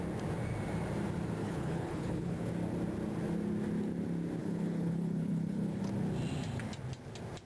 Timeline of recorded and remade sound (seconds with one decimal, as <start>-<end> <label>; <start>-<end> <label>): 0.0-1.4 recorded; 1.4-2.5 remade; 2.5-4.4 recorded; 4.4-5.8 remade; 5.8-7.5 recorded